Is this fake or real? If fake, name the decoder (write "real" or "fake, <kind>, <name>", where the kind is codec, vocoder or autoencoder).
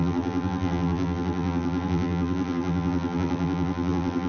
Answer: fake, vocoder, BigVGAN v2